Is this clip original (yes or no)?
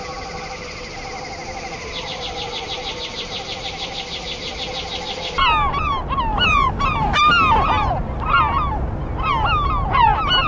yes